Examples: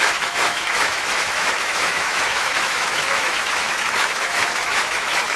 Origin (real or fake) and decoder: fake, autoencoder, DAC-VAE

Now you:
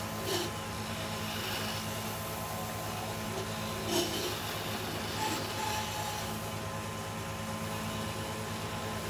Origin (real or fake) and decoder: real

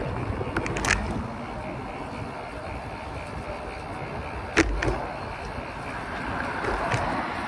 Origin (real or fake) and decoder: real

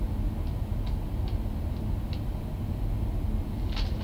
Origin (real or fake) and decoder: real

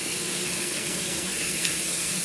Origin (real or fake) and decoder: fake, codec, SNAC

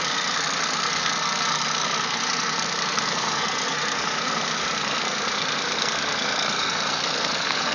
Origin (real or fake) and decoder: fake, codec, SNAC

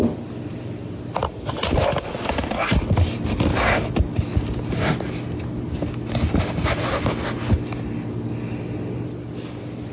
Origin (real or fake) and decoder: real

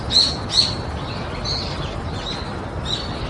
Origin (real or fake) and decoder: real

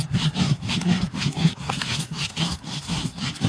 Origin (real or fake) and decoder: fake, codec, SNAC